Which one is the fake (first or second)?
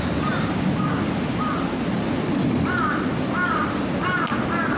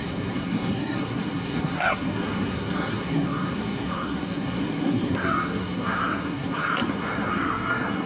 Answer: second